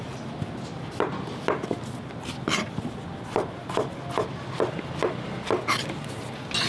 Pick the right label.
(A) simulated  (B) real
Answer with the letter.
B